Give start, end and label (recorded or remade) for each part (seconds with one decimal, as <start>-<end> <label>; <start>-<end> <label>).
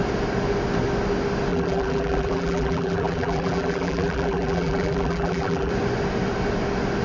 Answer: 0.0-1.5 recorded; 1.5-5.7 remade; 5.7-7.0 recorded